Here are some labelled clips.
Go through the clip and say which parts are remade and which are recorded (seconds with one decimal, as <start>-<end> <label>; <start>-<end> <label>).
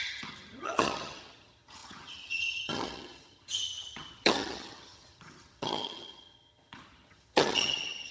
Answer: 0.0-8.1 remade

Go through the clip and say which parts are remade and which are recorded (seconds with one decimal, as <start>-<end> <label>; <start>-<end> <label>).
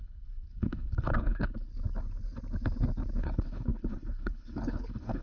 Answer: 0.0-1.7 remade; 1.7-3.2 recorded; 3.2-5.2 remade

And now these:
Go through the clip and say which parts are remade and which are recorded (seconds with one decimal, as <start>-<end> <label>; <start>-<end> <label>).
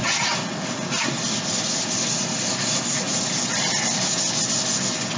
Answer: 0.0-3.1 recorded; 3.1-3.8 remade; 3.8-5.2 recorded